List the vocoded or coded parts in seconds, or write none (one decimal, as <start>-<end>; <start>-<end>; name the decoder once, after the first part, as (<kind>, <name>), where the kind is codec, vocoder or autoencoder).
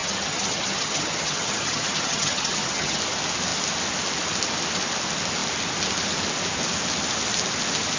0.0-3.0 (vocoder, HiFi-GAN)